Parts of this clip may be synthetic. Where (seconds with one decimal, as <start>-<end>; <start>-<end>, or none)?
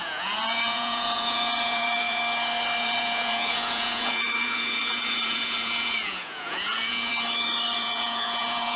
0.0-2.2; 2.8-7.1; 7.8-8.8